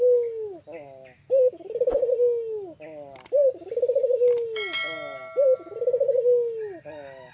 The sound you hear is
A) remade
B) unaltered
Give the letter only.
B